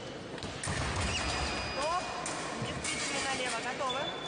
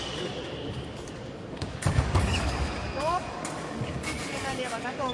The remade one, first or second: second